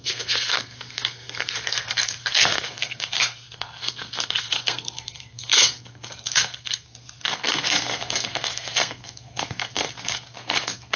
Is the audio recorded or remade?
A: remade